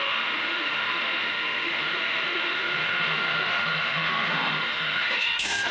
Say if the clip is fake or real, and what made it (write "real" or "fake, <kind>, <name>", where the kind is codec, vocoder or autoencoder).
fake, autoencoder, DAC-VAE